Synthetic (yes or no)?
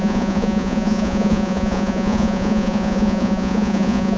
yes